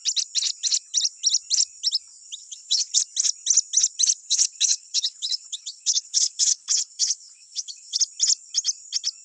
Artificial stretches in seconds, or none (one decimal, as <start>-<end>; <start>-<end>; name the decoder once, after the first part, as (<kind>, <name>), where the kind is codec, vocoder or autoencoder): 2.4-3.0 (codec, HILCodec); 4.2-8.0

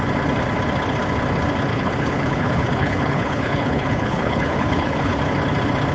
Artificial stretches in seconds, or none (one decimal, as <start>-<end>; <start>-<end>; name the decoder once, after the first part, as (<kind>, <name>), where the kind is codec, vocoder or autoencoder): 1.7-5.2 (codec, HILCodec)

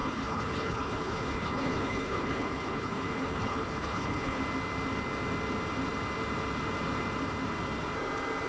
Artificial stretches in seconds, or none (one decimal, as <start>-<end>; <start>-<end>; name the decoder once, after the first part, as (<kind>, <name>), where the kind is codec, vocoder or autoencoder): 0.0-4.4 (codec, HILCodec)

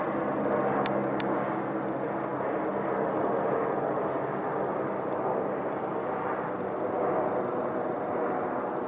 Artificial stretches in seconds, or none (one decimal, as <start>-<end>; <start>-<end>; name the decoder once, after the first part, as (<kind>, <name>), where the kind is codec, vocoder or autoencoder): none

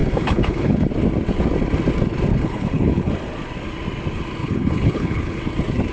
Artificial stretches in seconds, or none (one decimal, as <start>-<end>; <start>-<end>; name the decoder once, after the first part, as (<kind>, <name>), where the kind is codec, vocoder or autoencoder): 0.0-0.9 (codec, HILCodec); 2.3-3.1; 4.4-5.4